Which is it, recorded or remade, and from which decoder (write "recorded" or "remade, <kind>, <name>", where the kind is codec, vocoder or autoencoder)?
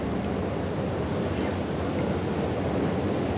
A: recorded